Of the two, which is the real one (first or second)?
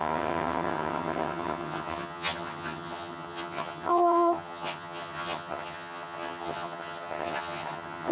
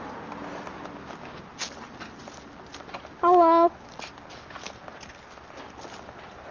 second